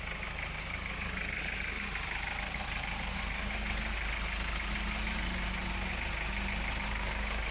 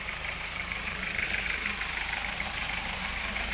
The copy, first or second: second